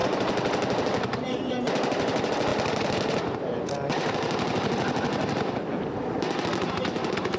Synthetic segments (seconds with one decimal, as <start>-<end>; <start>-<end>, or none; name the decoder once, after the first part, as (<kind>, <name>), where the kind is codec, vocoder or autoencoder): none